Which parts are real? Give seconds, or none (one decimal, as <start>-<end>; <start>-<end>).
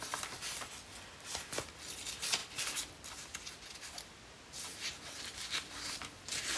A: 0.0-6.6